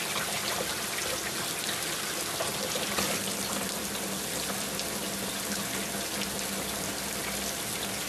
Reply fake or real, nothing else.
real